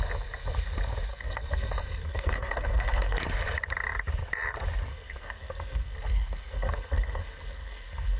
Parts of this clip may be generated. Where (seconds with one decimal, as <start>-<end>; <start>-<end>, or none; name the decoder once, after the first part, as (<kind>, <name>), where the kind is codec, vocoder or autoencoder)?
1.1-3.2 (codec, SNAC); 4.9-8.2